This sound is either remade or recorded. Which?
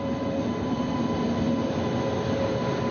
recorded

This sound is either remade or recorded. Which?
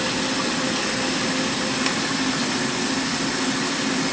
recorded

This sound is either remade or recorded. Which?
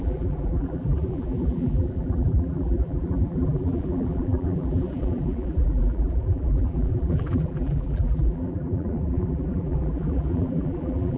remade